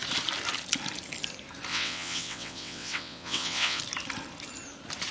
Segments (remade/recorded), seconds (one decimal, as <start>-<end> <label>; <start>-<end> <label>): 0.0-1.7 recorded; 1.7-3.8 remade; 3.8-5.1 recorded